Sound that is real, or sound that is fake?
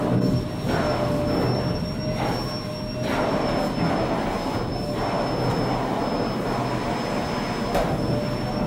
real